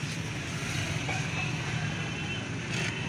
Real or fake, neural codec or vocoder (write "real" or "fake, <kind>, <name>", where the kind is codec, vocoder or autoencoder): real